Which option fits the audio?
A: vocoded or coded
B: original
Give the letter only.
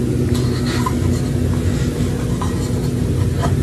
B